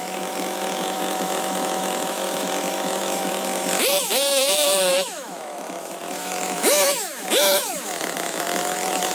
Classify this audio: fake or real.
fake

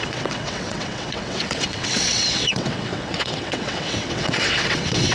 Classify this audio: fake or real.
fake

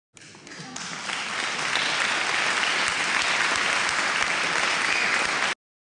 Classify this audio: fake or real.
real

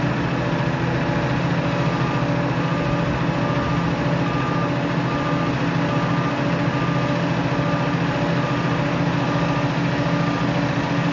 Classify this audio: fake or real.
real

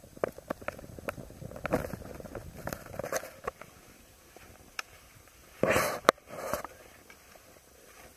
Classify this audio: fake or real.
real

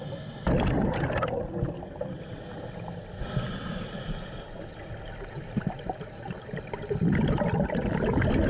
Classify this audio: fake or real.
real